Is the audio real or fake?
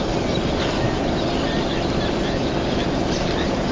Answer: fake